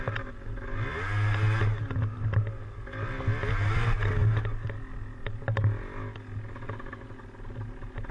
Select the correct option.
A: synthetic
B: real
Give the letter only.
B